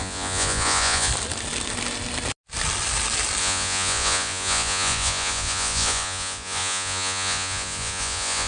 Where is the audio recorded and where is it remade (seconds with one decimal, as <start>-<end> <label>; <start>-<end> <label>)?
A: 0.0-1.1 remade; 1.1-3.4 recorded; 3.4-8.5 remade